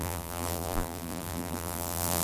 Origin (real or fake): fake